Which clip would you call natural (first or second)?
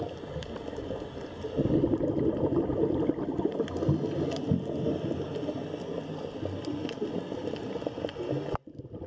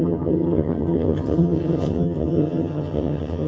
first